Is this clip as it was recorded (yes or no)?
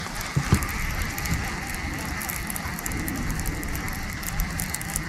yes